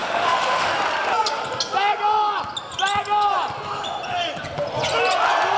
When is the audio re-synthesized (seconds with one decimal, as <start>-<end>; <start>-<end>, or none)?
0.0-0.7